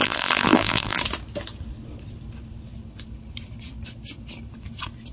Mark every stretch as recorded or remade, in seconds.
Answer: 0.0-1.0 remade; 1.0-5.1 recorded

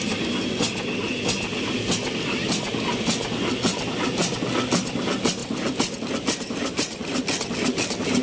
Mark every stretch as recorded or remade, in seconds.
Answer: 0.0-8.2 recorded

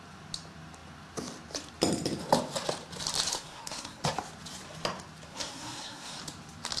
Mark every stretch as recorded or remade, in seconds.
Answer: 0.0-3.3 recorded; 3.3-4.0 remade; 4.0-5.3 recorded; 5.3-6.2 remade; 6.2-6.8 recorded

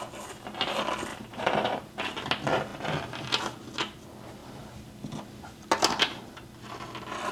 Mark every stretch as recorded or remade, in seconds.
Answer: 0.0-1.1 recorded; 1.1-2.0 remade; 2.0-7.3 recorded

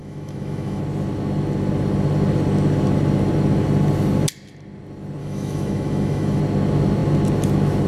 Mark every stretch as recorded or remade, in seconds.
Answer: 0.0-0.8 remade; 0.8-5.2 recorded; 5.2-6.4 remade; 6.4-7.9 recorded